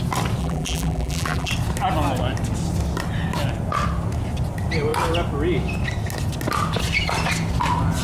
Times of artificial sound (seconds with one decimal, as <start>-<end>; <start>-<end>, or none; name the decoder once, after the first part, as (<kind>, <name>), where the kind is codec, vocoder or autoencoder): 0.4-1.5 (vocoder, BigVGAN v2)